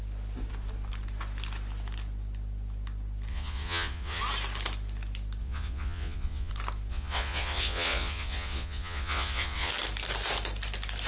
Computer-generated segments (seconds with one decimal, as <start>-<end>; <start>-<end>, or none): 3.3-4.2; 5.4-6.5; 6.9-9.7